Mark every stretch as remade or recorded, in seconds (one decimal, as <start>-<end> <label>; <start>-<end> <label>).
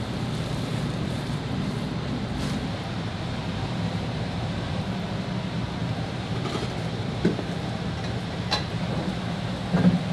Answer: 0.0-0.7 recorded; 0.7-1.7 remade; 1.7-3.4 recorded; 3.4-4.5 remade; 4.5-5.8 recorded; 5.8-9.1 remade; 9.1-10.1 recorded